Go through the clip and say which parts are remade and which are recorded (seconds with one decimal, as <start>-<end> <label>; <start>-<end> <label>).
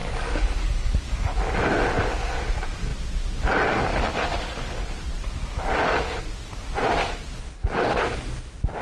0.0-1.4 remade; 1.4-8.8 recorded